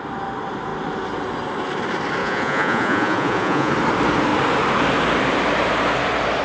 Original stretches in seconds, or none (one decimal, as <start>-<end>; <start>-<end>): 0.0-2.2; 3.7-6.4